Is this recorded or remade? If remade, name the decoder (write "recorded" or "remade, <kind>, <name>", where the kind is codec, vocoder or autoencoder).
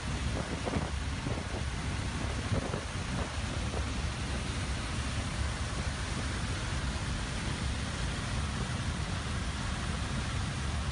recorded